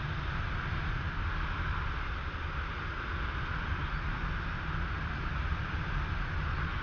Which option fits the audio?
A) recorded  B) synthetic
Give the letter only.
A